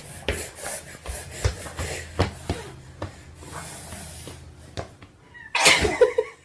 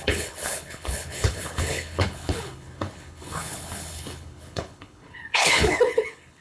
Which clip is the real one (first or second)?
first